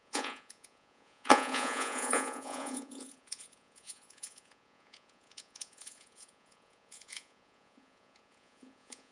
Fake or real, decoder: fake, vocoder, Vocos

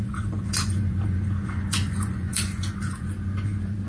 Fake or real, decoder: fake, vocoder, Vocos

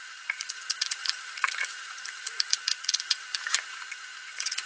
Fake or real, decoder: fake, vocoder, Vocos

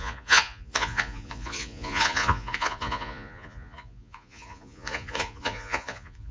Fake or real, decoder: fake, vocoder, Vocos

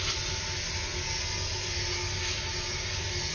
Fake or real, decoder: real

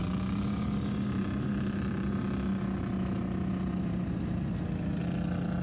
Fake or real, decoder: real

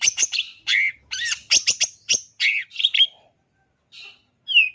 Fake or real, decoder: real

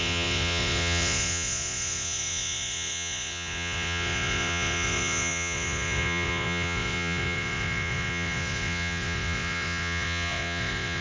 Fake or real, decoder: fake, vocoder, Vocos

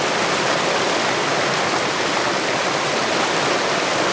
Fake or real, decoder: real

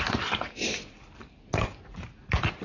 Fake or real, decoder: real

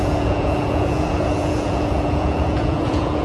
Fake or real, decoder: fake, vocoder, Vocos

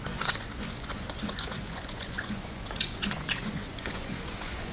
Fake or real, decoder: fake, vocoder, Vocos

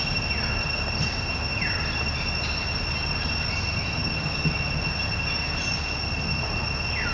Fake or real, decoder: real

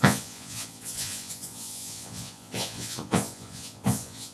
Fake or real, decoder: fake, vocoder, Vocos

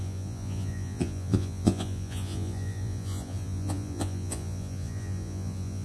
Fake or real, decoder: fake, vocoder, Vocos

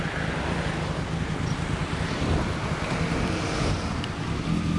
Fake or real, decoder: real